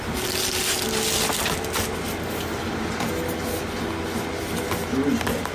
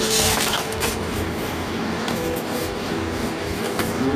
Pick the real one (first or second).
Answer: first